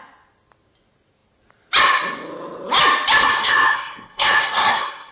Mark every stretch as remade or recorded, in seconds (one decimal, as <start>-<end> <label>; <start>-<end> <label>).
0.0-3.2 recorded; 3.2-5.1 remade